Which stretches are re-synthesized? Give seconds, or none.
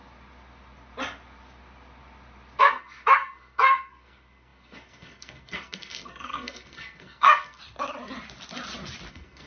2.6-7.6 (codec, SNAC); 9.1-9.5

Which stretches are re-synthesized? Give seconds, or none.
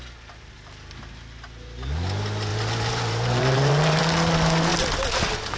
2.5-4.0 (vocoder, BigVGAN v2)